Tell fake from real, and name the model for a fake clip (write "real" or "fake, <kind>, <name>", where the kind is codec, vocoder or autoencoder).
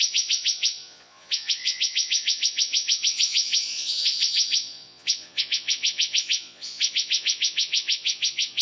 fake, vocoder, Vocos